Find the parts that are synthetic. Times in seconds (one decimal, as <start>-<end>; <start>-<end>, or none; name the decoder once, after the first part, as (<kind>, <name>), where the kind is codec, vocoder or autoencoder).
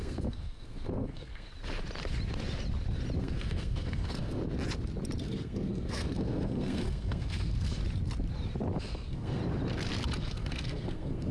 0.0-1.5 (codec, SNAC); 3.2-4.4; 5.2-7.8; 8.8-9.4; 10.2-11.3